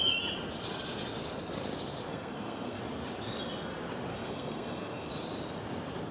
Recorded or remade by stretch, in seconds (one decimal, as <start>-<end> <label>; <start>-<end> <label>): 0.0-2.1 recorded; 2.1-2.8 remade; 2.8-4.1 recorded; 4.1-5.1 remade; 5.1-6.1 recorded